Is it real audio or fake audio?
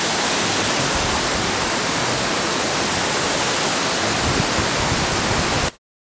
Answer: real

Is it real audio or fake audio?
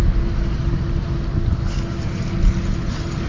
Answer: real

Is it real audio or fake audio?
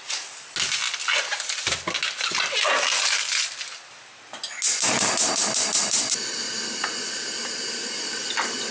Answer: real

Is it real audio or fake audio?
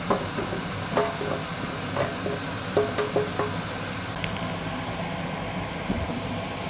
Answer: real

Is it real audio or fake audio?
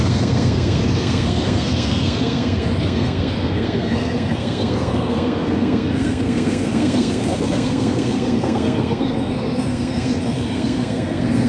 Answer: fake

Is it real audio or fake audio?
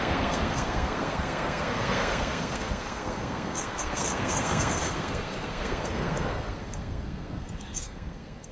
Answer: fake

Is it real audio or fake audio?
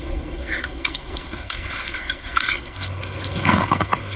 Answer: fake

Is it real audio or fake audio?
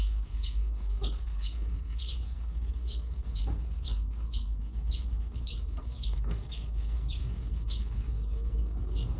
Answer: fake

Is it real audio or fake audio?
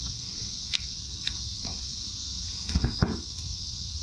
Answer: fake